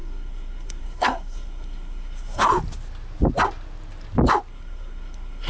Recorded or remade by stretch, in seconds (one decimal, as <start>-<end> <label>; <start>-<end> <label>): 0.0-2.5 remade; 2.5-4.5 recorded; 4.5-5.5 remade